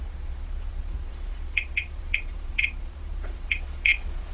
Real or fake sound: fake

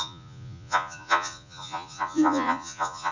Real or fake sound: fake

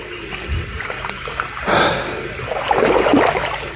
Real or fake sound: real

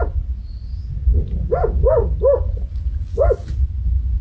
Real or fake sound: real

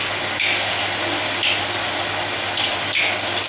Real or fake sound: real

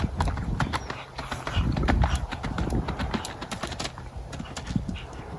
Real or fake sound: real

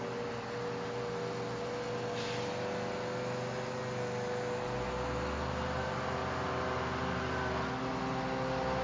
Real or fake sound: real